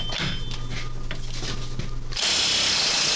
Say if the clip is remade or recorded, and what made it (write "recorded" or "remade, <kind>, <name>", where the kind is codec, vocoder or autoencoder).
recorded